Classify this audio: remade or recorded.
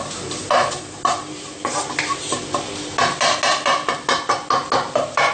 recorded